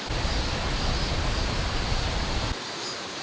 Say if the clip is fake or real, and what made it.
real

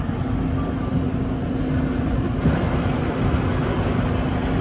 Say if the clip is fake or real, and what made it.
real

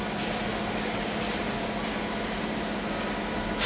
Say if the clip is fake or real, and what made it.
real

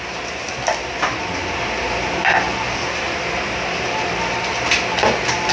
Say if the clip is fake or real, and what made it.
real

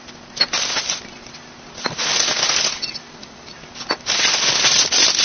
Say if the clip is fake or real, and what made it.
real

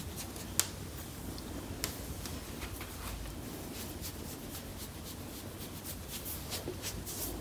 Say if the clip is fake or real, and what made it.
real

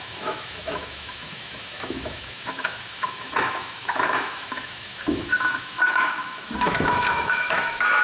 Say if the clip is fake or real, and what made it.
fake, autoencoder, DAC-VAE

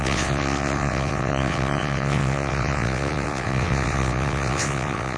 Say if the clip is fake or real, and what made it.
fake, vocoder, WaveNeXt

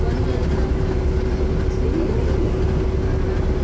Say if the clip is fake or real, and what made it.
real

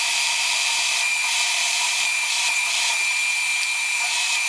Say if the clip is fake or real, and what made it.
fake, vocoder, BigVGAN v2